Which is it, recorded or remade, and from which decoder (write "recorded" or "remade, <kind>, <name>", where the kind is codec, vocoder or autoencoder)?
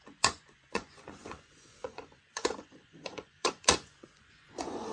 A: remade, vocoder, Vocos